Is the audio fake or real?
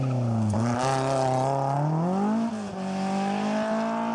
real